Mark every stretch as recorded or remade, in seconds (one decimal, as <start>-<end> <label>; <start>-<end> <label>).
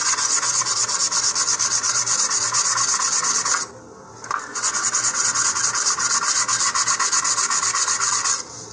0.0-0.7 remade; 0.7-4.5 recorded; 4.5-5.6 remade; 5.6-8.7 recorded